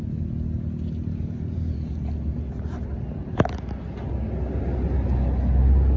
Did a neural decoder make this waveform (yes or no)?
no